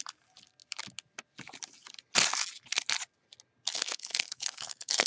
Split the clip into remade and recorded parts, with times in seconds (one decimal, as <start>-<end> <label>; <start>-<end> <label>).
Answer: 0.0-3.7 recorded; 3.7-5.1 remade